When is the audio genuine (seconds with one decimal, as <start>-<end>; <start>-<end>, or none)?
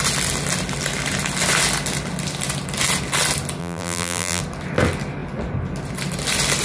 0.0-3.6; 4.4-6.6